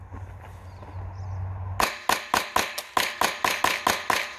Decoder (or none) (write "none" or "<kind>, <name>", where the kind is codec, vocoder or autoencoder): none